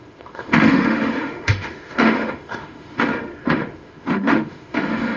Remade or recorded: remade